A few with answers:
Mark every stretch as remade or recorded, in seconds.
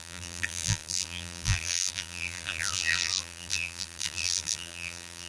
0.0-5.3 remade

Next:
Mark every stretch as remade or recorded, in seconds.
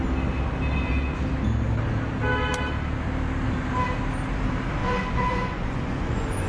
0.0-4.8 recorded; 4.8-6.5 remade